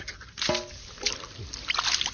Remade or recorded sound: recorded